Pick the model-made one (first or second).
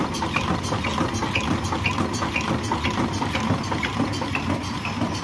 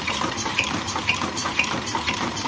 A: second